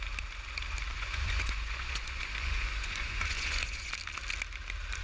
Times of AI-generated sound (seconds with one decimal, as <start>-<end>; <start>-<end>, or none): 0.9-3.9